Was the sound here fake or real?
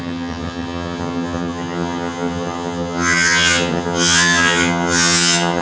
fake